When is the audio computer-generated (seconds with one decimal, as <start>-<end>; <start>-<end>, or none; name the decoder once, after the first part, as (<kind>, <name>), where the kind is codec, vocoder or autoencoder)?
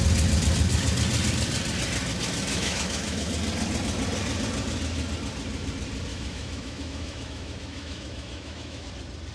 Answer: 2.5-3.3 (autoencoder, DAC-VAE); 6.1-8.9